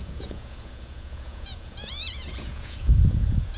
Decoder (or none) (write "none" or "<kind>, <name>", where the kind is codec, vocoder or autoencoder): vocoder, Vocos